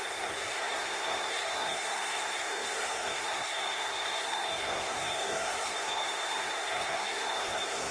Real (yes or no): no